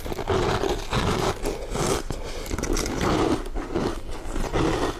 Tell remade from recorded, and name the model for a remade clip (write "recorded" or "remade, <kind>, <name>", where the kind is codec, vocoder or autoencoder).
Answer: recorded